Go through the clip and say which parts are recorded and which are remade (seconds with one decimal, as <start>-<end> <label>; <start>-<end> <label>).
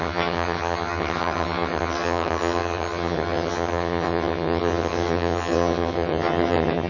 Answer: 0.0-6.9 remade